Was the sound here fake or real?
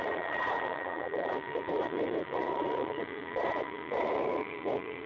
fake